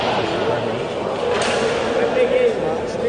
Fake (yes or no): no